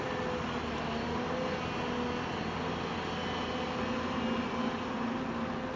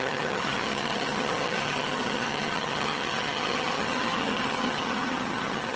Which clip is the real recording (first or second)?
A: first